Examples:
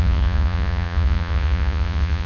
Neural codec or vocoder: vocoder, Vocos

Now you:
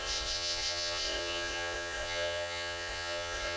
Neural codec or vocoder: vocoder, Vocos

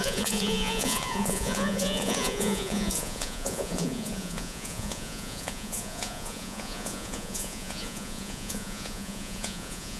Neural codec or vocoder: vocoder, Vocos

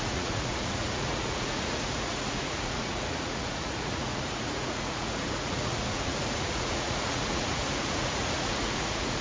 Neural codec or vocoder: vocoder, Vocos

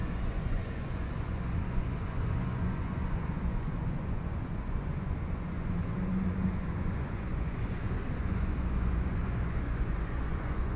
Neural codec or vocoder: vocoder, Vocos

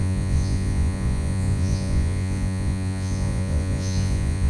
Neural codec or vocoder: vocoder, Vocos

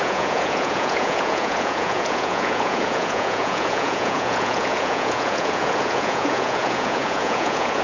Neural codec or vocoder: vocoder, Vocos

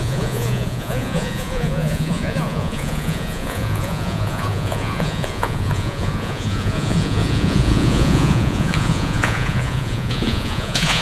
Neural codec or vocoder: vocoder, Vocos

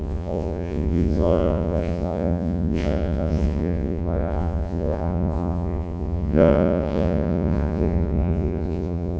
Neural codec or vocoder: vocoder, Vocos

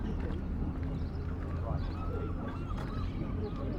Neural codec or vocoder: none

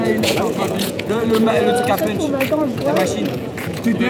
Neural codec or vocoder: vocoder, Vocos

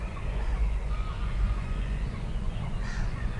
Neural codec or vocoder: vocoder, Vocos